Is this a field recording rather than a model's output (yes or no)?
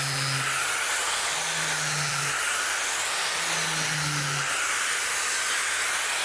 yes